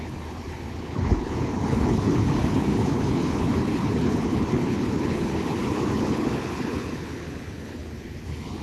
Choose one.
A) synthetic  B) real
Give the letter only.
A